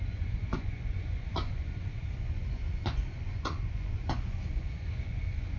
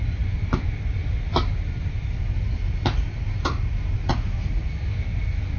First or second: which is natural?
second